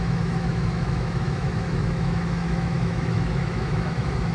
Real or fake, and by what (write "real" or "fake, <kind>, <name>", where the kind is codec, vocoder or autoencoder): fake, autoencoder, DAC-VAE